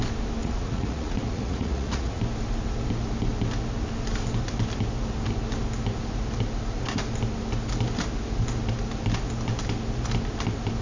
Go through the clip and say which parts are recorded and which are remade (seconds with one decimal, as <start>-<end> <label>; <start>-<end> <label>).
0.0-0.4 recorded; 0.4-2.2 remade; 2.2-10.8 recorded